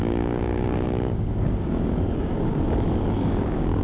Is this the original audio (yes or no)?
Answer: no